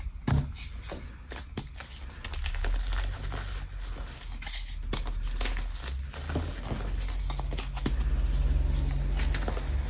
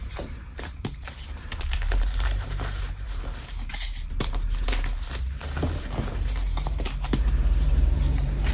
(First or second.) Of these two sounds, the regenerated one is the second